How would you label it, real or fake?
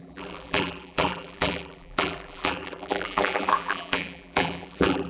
fake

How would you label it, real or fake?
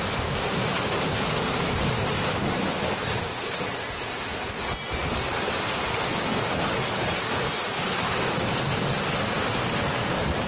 real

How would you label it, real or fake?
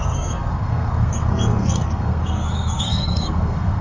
fake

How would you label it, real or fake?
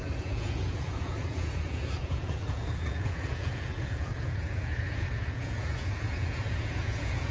fake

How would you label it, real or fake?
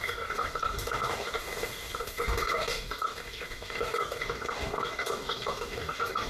fake